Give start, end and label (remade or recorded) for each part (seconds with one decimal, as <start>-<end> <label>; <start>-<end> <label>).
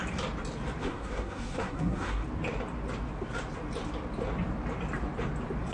0.0-0.8 recorded; 0.8-2.2 remade; 2.2-5.7 recorded